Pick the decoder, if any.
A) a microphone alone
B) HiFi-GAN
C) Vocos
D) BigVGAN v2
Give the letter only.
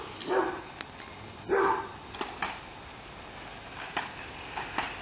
A